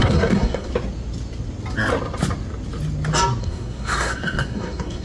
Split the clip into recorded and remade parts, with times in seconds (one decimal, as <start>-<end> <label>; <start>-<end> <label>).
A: 0.0-0.7 remade; 0.7-3.4 recorded; 3.4-5.0 remade